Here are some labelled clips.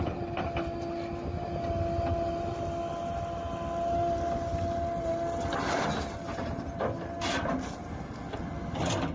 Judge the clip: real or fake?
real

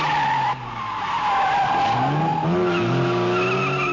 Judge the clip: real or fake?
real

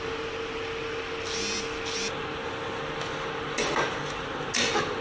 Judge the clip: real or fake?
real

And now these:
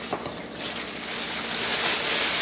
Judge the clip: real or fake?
real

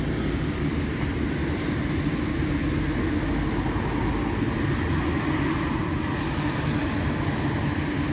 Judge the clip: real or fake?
real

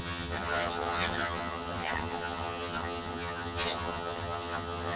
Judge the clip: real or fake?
fake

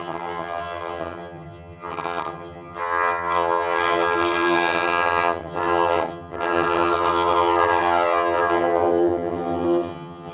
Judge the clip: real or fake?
fake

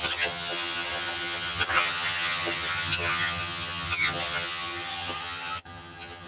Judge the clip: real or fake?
fake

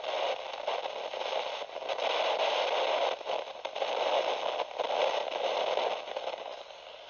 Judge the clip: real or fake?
real